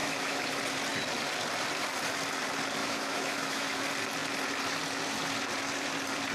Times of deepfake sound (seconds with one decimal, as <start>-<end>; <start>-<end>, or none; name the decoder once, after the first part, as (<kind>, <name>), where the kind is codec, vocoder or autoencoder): 0.0-0.5 (autoencoder, DAC-VAE); 2.8-3.8